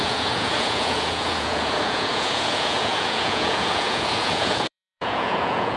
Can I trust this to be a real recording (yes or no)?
no